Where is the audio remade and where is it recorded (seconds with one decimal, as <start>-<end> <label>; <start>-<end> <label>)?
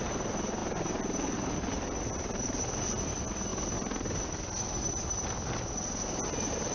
0.0-6.7 recorded